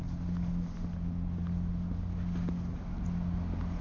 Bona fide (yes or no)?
yes